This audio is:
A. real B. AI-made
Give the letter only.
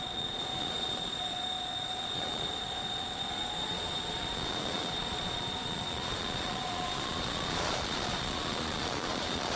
B